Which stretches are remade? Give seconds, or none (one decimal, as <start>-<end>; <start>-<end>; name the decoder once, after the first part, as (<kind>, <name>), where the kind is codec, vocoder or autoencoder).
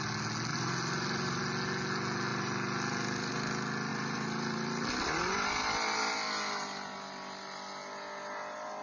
0.5-1.4 (vocoder, BigVGAN v2); 2.3-3.3; 3.9-6.1